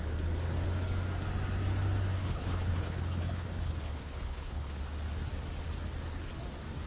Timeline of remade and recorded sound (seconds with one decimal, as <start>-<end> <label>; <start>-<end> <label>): 0.0-2.2 recorded; 2.2-4.8 remade; 4.8-6.9 recorded